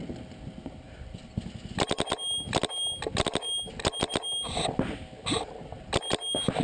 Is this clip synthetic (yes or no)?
no